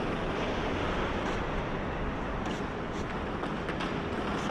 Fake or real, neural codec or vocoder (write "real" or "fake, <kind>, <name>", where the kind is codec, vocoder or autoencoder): real